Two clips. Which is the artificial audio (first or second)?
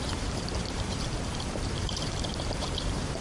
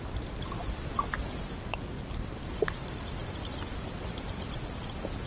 first